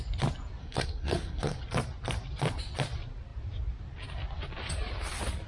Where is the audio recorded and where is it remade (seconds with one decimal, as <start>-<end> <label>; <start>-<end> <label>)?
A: 0.0-0.6 recorded; 0.6-1.6 remade; 1.6-5.5 recorded